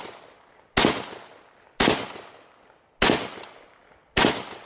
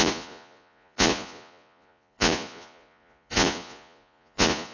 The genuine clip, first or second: first